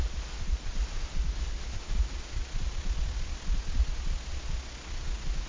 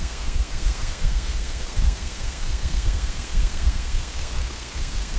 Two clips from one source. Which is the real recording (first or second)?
first